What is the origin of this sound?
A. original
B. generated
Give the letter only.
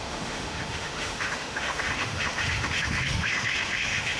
B